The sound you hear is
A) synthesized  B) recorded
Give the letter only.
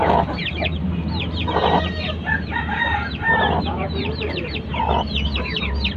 A